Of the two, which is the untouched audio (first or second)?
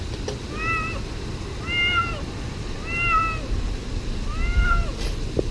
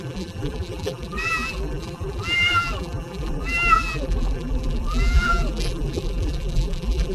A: first